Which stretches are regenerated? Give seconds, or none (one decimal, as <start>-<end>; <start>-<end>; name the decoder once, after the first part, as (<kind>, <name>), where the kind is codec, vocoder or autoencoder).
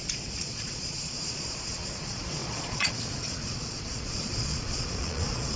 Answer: 0.0-5.6 (vocoder, Vocos)